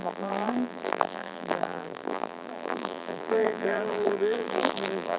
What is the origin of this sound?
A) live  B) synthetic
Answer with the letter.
B